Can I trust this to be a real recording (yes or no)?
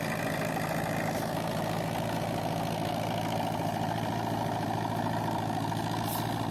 yes